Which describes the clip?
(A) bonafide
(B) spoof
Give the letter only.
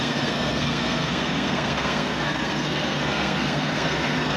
B